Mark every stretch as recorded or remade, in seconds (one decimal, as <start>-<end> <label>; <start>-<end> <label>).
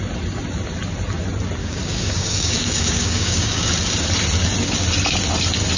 0.0-1.6 recorded; 1.6-3.7 remade; 3.7-5.8 recorded